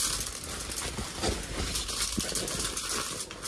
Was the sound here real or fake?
real